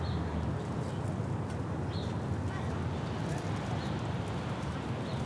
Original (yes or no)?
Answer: yes